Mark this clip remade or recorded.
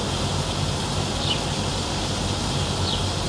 recorded